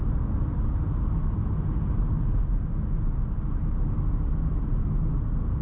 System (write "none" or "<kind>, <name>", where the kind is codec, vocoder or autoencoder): none